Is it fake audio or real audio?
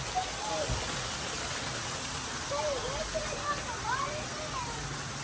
real